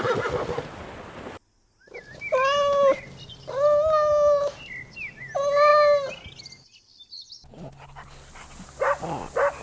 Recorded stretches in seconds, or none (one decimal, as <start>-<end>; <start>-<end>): 0.0-9.6